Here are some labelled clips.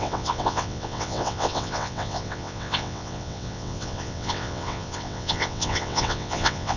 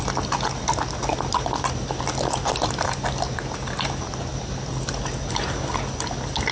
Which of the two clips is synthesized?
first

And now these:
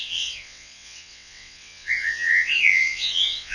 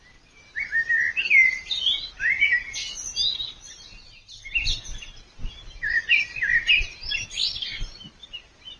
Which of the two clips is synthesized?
first